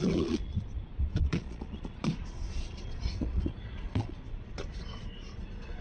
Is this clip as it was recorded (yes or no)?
no